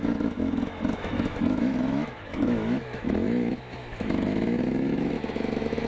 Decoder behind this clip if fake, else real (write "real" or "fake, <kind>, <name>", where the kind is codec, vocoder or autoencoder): fake, autoencoder, DAC-VAE